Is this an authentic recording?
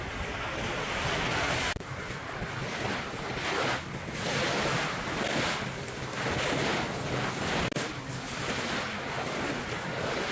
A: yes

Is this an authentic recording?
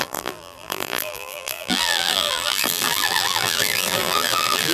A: no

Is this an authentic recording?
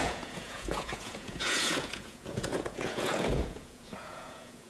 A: no